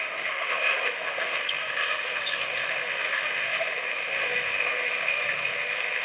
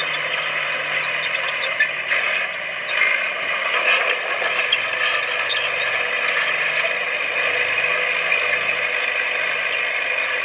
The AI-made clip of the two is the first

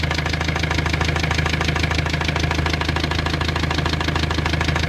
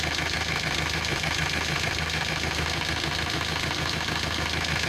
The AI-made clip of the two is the second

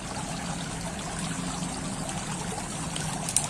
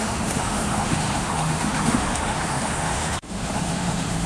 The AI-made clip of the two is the second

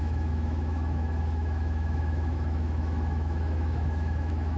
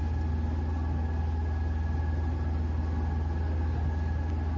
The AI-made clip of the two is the first